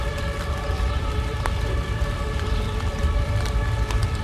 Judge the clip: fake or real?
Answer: fake